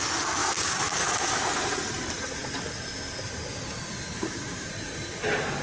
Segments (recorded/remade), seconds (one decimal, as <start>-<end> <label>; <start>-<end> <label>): 0.0-0.4 recorded; 0.4-0.9 remade; 0.9-4.1 recorded; 4.1-4.7 remade; 4.7-5.6 recorded